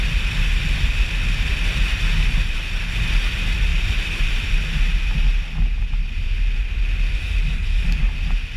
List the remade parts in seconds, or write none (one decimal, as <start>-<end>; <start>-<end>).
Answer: none